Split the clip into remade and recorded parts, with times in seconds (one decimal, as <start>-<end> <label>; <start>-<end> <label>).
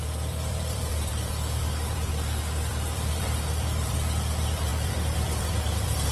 0.0-2.1 remade; 2.1-2.7 recorded; 2.7-6.1 remade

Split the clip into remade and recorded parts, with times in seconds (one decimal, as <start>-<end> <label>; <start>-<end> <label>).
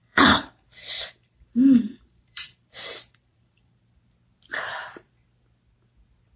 0.0-3.8 remade; 3.8-6.4 recorded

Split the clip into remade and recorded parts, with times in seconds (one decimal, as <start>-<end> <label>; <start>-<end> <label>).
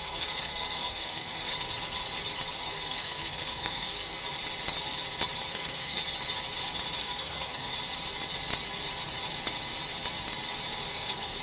0.0-1.5 remade; 1.5-2.6 recorded; 2.6-4.2 remade; 4.2-5.5 recorded; 5.5-6.0 remade; 6.0-7.0 recorded; 7.0-7.7 remade; 7.7-10.9 recorded; 10.9-11.4 remade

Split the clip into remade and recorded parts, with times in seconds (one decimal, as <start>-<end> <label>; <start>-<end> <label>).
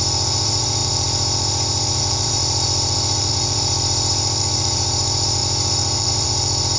0.0-6.8 remade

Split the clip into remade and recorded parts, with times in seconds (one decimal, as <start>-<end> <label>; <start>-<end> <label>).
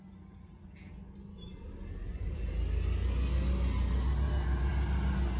0.0-5.4 recorded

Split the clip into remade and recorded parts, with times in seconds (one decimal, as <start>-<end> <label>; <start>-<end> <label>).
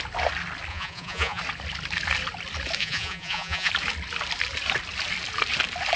0.0-0.7 recorded; 0.7-1.4 remade; 1.4-2.8 recorded; 2.8-3.7 remade; 3.7-6.0 recorded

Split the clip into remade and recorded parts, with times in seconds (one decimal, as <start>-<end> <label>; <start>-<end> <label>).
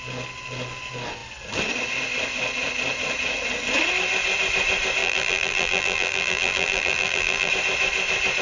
0.0-5.0 recorded; 5.0-7.5 remade; 7.5-8.4 recorded